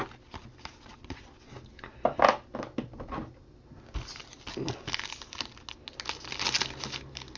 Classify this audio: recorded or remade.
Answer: recorded